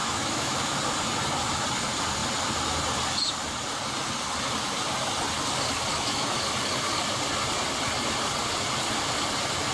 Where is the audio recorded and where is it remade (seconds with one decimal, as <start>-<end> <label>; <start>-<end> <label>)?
0.0-0.8 remade; 0.8-5.9 recorded; 5.9-6.4 remade; 6.4-9.7 recorded